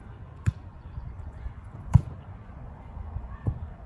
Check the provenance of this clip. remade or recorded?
remade